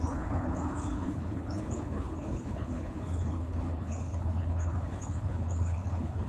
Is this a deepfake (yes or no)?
yes